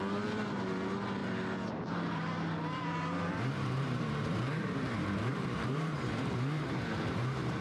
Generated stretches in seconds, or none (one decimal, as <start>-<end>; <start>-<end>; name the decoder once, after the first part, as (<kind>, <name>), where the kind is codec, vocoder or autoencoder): 0.0-1.2 (vocoder, BigVGAN v2); 1.7-7.6